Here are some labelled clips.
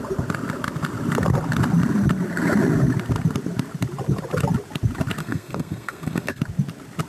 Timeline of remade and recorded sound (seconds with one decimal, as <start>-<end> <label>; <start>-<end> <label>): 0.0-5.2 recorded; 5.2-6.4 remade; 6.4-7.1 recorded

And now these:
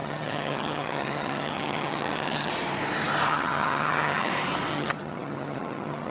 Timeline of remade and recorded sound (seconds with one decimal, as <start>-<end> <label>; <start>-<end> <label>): 0.0-2.5 remade; 2.5-3.3 recorded; 3.3-4.3 remade; 4.3-4.7 recorded; 4.7-6.1 remade

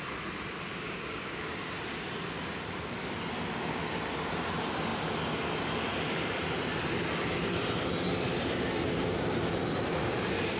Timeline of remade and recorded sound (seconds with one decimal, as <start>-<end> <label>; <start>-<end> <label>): 0.0-0.7 recorded; 0.7-1.7 remade; 1.7-10.6 recorded